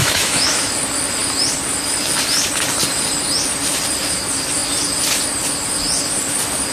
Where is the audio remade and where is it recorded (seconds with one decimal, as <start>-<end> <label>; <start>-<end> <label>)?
0.0-0.7 remade; 0.7-6.7 recorded